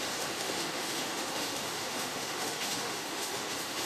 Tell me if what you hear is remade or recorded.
remade